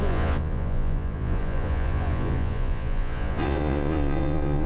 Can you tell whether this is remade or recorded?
remade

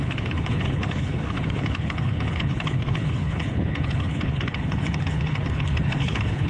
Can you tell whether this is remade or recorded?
remade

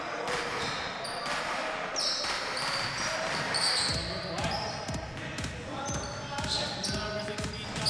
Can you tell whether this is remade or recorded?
recorded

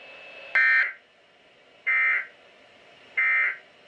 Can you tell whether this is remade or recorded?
recorded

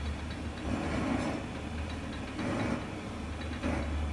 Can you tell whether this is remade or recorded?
recorded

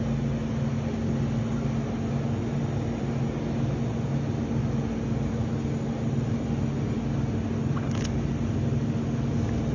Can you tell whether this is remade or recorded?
recorded